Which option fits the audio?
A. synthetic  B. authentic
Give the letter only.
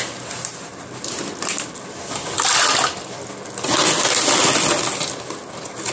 B